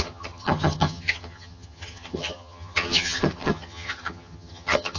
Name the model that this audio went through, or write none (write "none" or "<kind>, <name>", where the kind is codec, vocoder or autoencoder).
vocoder, HiFi-GAN